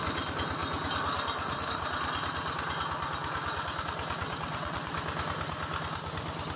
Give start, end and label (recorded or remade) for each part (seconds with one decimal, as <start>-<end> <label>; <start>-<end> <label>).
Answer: 0.0-4.2 recorded; 4.2-4.9 remade; 4.9-6.6 recorded